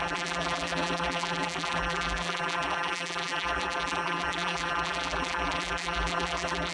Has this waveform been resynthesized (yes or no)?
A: yes